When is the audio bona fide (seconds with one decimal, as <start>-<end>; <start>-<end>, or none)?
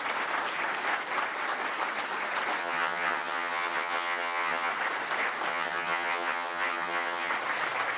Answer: 0.0-2.6; 4.7-5.5; 7.3-8.0